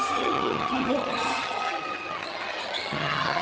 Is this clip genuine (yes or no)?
no